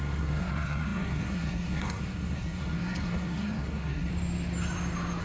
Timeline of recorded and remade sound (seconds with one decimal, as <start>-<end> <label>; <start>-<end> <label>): 0.0-4.1 remade; 4.1-5.2 recorded